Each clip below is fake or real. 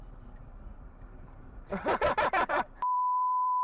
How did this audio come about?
fake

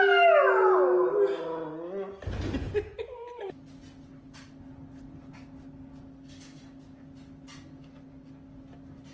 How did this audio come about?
real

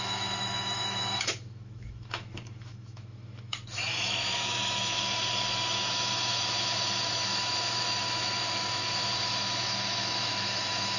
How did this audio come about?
fake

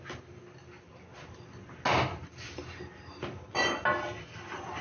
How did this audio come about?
real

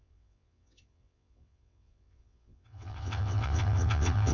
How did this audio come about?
fake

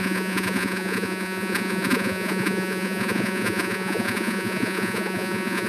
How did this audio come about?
fake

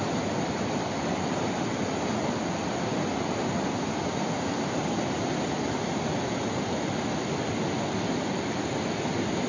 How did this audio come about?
real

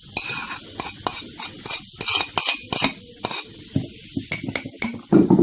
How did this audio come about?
real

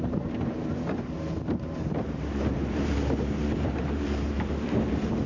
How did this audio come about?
fake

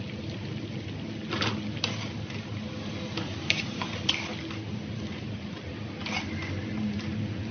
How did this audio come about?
real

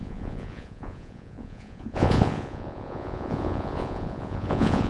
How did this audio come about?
fake